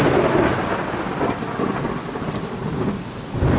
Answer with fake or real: real